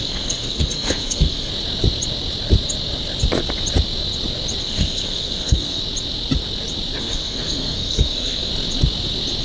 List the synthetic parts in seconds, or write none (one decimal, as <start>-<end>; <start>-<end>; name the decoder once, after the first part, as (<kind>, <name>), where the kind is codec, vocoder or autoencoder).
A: 0.0-1.5 (codec, SNAC); 4.6-5.8; 7.0-8.5